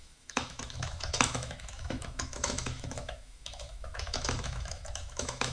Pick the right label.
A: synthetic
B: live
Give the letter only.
A